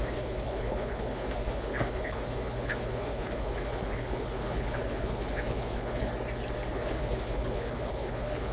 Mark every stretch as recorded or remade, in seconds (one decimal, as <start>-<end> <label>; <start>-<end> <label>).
0.0-6.1 remade; 6.1-6.7 recorded; 6.7-8.5 remade